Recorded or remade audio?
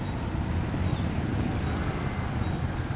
recorded